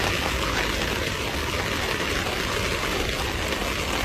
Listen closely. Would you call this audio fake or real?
real